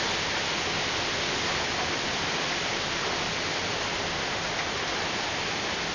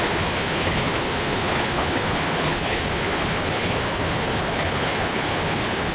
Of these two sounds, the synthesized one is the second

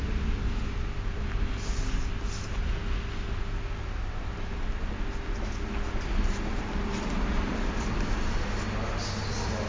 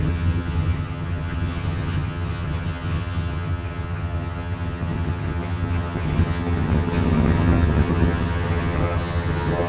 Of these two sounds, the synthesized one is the second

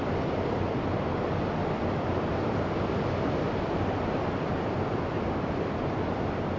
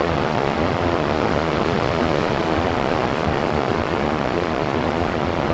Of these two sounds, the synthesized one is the second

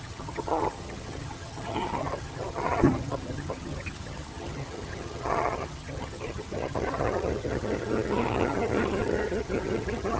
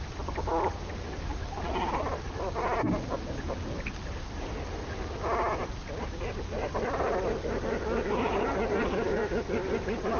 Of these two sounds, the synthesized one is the first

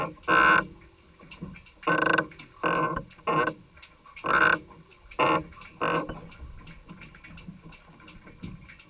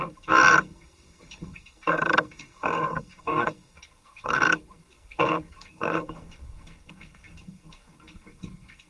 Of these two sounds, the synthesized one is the second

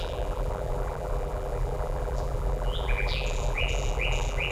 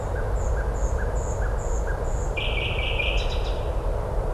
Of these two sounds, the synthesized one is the first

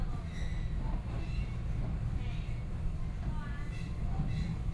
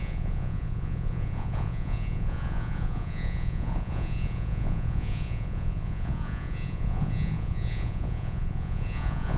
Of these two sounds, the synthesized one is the second